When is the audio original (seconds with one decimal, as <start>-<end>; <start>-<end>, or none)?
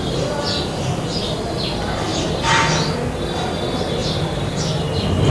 0.0-2.1; 2.6-4.0; 4.6-5.3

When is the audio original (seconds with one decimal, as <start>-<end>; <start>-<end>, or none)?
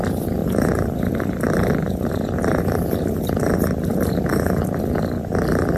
0.0-0.4; 3.5-3.9; 4.6-5.8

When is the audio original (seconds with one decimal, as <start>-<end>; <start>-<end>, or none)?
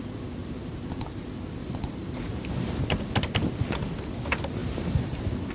0.0-0.4; 1.1-1.6; 2.7-4.6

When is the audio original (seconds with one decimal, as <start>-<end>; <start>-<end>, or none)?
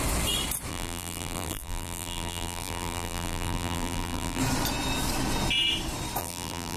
0.0-0.7; 4.4-6.2